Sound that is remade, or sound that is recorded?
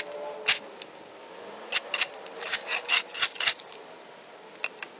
recorded